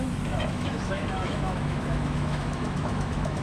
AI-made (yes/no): yes